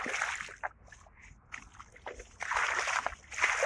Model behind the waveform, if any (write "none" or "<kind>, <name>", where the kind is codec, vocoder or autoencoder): none